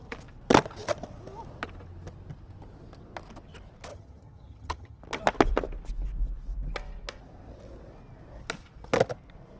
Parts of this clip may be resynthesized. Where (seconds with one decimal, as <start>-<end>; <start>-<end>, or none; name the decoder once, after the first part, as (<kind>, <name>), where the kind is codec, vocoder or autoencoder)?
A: 3.9-5.0 (vocoder, HiFi-GAN)